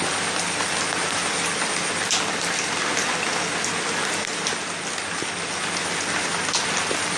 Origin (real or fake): real